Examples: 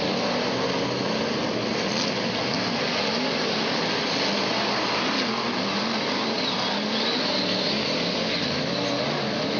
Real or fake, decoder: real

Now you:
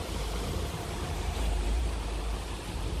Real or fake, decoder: fake, vocoder, BigVGAN v2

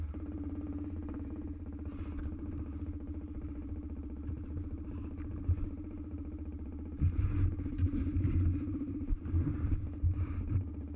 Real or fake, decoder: fake, vocoder, BigVGAN v2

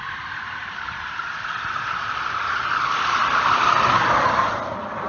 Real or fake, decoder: fake, vocoder, BigVGAN v2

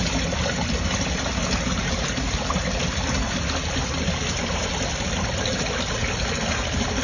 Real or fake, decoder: real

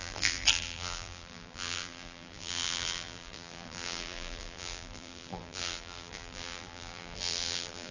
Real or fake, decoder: fake, vocoder, BigVGAN v2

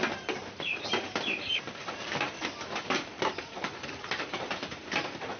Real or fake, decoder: fake, vocoder, BigVGAN v2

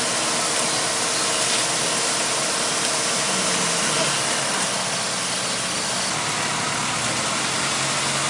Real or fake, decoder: real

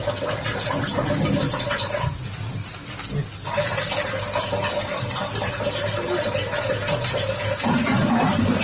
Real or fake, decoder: real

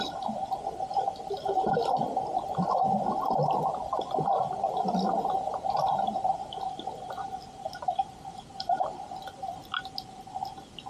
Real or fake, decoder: real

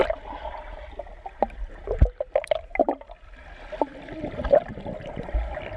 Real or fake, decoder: real